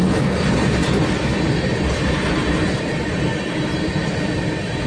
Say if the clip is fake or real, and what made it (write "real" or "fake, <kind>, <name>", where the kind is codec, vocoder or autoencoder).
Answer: real